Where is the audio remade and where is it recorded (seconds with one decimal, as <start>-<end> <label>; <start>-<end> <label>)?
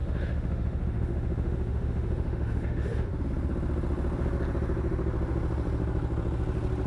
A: 0.0-3.1 remade; 3.1-6.9 recorded